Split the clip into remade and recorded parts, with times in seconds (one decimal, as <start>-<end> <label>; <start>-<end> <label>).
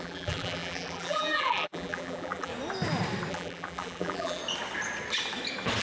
0.0-2.5 remade; 2.5-3.3 recorded; 3.3-4.4 remade; 4.4-5.8 recorded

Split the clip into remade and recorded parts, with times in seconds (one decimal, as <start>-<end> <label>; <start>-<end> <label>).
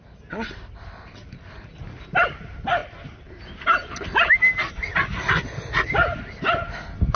0.0-7.2 recorded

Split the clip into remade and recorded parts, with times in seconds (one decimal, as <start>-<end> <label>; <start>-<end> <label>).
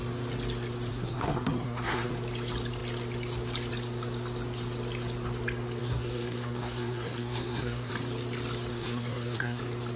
0.0-0.9 recorded; 0.9-2.1 remade; 2.1-5.8 recorded; 5.8-7.9 remade; 7.9-8.7 recorded; 8.7-9.6 remade; 9.6-10.0 recorded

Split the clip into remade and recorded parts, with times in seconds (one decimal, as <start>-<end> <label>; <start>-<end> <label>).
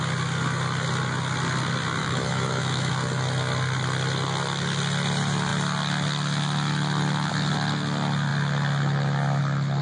0.0-2.0 recorded; 2.0-2.9 remade; 2.9-9.8 recorded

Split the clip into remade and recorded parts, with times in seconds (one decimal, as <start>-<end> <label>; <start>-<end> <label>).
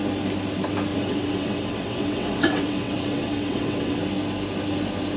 0.0-0.9 recorded; 0.9-4.0 remade; 4.0-5.2 recorded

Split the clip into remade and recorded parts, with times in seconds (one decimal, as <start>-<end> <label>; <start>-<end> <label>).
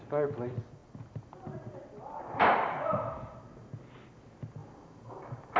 0.0-5.6 recorded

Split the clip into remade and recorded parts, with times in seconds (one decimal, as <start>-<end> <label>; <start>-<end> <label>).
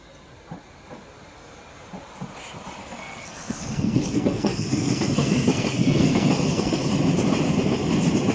0.0-2.8 recorded; 2.8-6.8 remade; 6.8-8.3 recorded